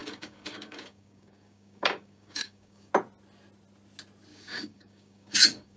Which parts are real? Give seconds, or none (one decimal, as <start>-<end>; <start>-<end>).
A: 2.9-4.3